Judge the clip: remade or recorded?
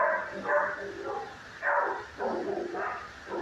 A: recorded